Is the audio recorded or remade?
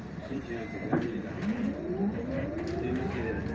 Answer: remade